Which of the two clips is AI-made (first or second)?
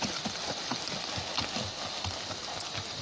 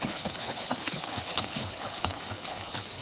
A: second